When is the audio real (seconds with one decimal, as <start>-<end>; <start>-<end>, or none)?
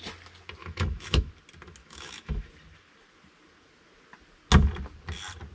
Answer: 0.0-0.6; 1.3-1.8; 2.5-5.5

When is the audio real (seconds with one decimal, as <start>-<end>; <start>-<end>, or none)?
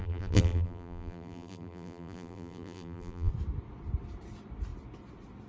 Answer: 3.3-5.5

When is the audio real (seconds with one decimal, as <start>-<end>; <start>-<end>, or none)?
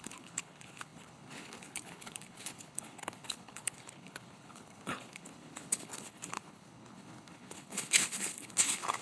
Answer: none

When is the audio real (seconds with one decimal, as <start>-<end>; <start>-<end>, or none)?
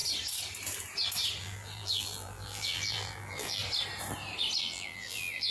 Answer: 0.0-1.4; 3.6-4.6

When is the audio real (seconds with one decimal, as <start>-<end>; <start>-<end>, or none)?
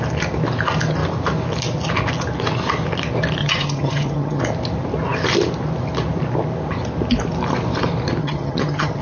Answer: 0.0-3.4; 4.4-8.2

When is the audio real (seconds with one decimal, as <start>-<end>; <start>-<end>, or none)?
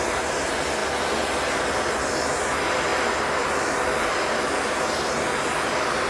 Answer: 0.0-6.1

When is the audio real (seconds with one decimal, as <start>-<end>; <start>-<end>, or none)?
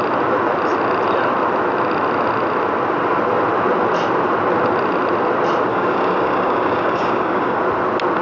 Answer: 0.0-5.7; 7.6-8.2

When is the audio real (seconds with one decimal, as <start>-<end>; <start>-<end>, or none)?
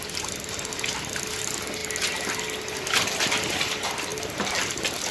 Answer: 0.0-5.1